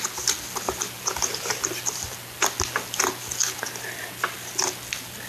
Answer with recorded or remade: recorded